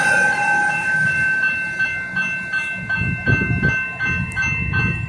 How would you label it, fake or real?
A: real